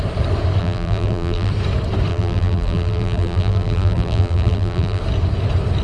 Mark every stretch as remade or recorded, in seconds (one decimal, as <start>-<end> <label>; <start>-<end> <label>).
0.0-0.6 recorded; 0.6-1.5 remade; 1.5-2.1 recorded; 2.1-5.0 remade; 5.0-5.8 recorded